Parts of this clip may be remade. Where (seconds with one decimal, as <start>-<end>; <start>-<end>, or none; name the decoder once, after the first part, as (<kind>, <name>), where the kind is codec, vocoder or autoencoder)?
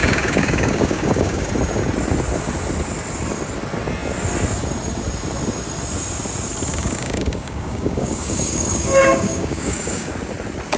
0.0-1.5 (codec, DAC); 6.7-10.1